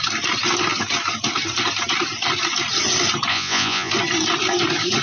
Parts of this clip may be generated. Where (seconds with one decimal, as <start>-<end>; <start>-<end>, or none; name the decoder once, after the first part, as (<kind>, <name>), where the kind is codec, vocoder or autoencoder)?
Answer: 3.3-3.9 (vocoder, Vocos)